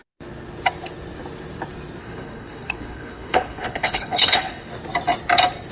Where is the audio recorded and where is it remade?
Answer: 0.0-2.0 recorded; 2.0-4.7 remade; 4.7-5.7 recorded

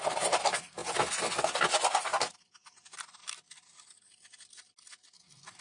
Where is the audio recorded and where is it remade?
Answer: 0.0-5.6 recorded